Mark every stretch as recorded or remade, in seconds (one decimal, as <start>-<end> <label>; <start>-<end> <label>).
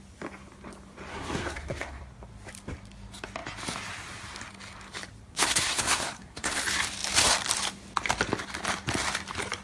0.0-1.1 recorded; 1.1-2.0 remade; 2.0-5.3 recorded; 5.3-6.6 remade; 6.6-9.6 recorded